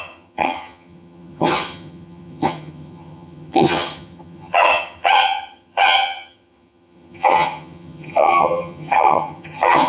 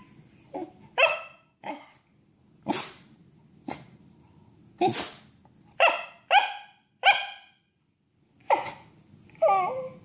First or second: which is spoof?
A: first